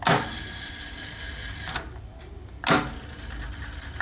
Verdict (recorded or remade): recorded